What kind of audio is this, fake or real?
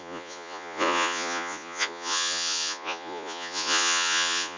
fake